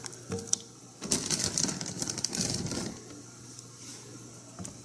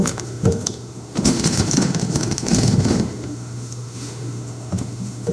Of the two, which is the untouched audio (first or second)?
first